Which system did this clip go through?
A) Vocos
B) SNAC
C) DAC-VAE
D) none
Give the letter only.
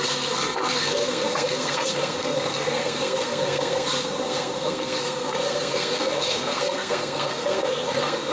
B